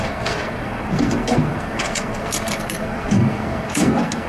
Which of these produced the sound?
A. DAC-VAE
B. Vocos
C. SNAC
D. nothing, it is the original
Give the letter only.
C